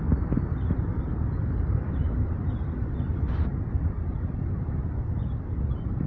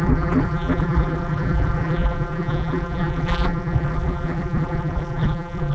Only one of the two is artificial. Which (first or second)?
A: second